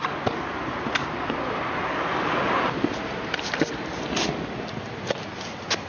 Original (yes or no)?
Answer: yes